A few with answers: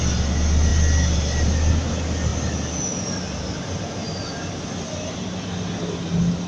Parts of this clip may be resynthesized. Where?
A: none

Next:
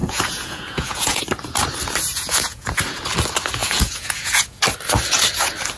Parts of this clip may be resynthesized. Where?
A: 0.0-1.2 (vocoder, Vocos); 2.1-2.7; 3.6-4.6

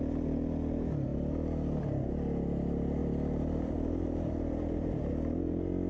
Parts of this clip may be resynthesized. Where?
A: 1.1-2.1 (vocoder, BigVGAN v2); 3.0-5.1

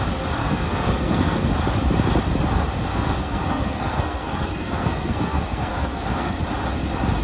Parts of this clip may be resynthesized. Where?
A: 0.4-1.5 (codec, SNAC); 2.9-6.4

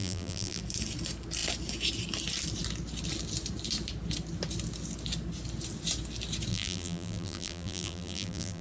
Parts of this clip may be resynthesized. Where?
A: 0.0-0.6 (vocoder, BigVGAN v2); 6.5-8.6

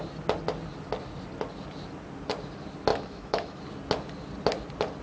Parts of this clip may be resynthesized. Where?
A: 2.9-3.6 (autoencoder, DAC-VAE)